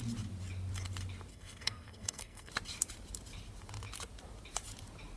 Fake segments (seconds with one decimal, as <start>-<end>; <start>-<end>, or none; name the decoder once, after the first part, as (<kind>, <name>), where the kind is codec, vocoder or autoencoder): 1.3-2.5 (codec, SNAC)